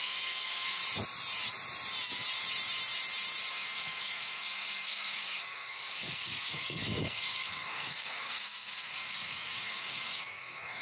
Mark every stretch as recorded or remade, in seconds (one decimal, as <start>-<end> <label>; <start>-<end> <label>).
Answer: 0.0-0.8 remade; 0.8-3.5 recorded; 3.5-10.8 remade